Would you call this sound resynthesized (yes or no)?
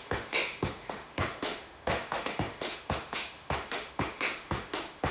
yes